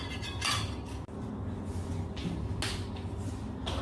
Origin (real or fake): real